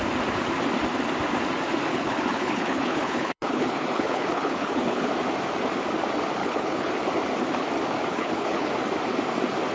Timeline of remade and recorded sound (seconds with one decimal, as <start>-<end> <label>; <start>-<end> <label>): 0.0-1.9 recorded; 1.9-5.1 remade; 5.1-6.4 recorded; 6.4-6.9 remade; 6.9-8.1 recorded; 8.1-8.7 remade; 8.7-9.7 recorded